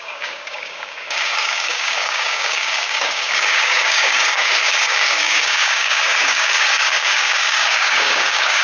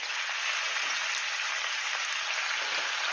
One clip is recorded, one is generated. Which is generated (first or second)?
first